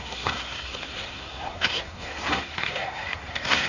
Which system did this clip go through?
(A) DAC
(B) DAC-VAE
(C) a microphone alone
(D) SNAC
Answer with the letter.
D